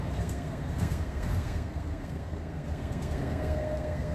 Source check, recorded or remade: remade